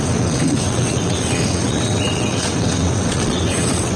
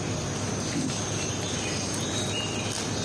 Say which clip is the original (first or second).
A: second